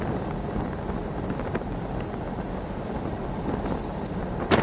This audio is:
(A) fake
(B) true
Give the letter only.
B